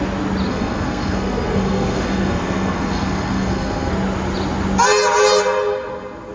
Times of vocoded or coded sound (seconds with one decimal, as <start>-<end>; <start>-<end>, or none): 0.5-3.9